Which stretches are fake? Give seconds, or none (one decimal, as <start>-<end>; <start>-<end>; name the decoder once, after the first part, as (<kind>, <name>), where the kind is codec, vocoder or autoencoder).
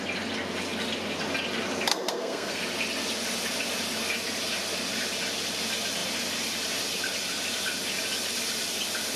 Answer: 1.9-2.6 (codec, SNAC)